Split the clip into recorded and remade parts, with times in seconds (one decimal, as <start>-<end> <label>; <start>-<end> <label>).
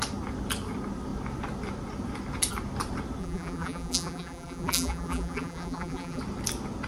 0.0-3.2 recorded; 3.2-6.2 remade; 6.2-6.9 recorded